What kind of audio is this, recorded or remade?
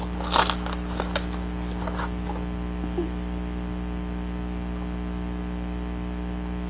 recorded